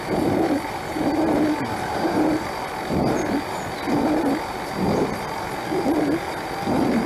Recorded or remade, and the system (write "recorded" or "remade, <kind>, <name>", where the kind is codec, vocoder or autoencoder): recorded